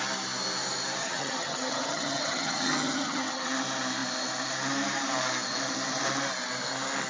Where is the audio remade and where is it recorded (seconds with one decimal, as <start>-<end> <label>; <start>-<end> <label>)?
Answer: 0.0-1.0 recorded; 1.0-3.5 remade; 3.5-7.1 recorded